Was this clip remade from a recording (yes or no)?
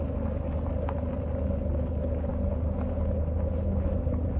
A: no